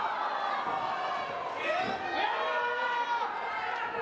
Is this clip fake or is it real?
real